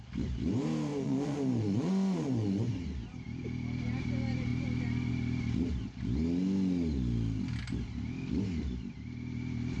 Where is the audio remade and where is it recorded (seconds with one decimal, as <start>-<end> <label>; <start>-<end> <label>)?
0.0-0.9 recorded; 0.9-2.7 remade; 2.7-9.8 recorded